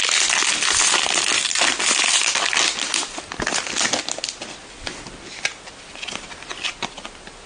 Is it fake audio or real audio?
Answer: real